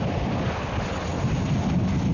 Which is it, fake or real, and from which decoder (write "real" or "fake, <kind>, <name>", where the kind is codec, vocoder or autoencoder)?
fake, vocoder, BigVGAN v2